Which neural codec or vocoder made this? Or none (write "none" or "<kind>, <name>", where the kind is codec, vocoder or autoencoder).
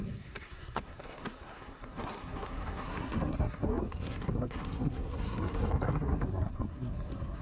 codec, SNAC